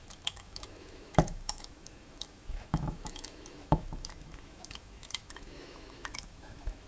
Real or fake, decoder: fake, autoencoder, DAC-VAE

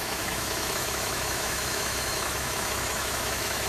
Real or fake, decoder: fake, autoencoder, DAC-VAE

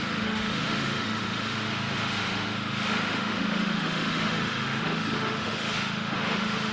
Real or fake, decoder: fake, autoencoder, DAC-VAE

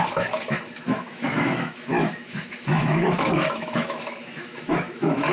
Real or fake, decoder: fake, autoencoder, DAC-VAE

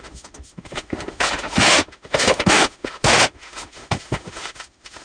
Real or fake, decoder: fake, autoencoder, DAC-VAE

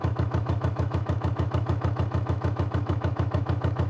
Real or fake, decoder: fake, autoencoder, DAC-VAE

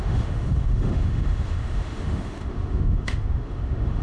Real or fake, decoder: fake, autoencoder, DAC-VAE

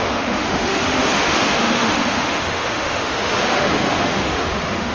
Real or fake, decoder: fake, autoencoder, DAC-VAE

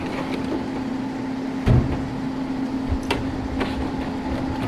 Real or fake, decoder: real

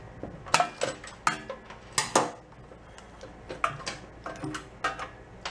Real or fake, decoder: real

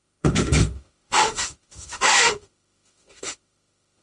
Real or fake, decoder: fake, autoencoder, DAC-VAE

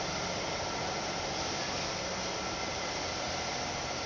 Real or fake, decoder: real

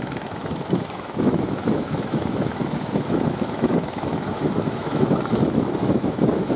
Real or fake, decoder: fake, autoencoder, DAC-VAE